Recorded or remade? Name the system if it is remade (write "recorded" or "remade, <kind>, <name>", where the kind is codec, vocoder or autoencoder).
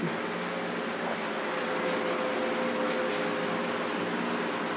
recorded